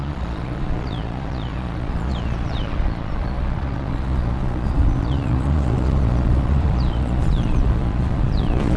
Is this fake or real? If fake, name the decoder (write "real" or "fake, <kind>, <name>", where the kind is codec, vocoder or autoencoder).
fake, vocoder, Vocos